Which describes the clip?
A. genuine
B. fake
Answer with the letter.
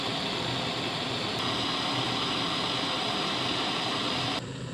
A